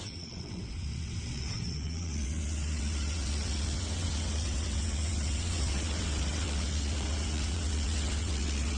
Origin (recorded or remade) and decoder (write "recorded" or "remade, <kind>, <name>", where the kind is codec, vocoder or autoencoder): remade, vocoder, WaveNeXt